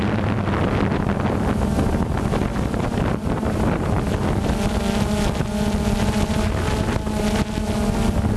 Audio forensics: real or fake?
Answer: real